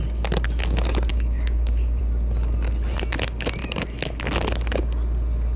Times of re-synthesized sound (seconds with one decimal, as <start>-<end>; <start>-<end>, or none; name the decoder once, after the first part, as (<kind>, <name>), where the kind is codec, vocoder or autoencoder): 1.1-2.0 (codec, DAC)